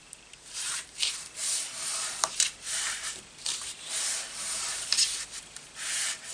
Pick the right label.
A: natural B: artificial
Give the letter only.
B